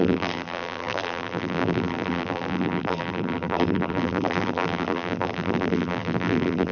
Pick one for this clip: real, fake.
fake